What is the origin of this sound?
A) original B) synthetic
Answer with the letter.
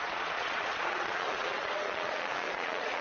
B